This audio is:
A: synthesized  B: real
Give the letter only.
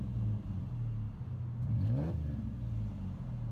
B